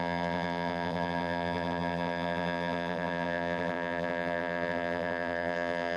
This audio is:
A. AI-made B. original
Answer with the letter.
A